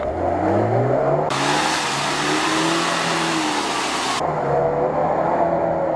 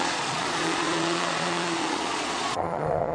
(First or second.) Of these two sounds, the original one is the first